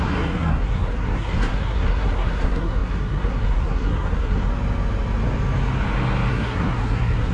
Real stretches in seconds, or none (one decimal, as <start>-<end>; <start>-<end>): 4.5-6.3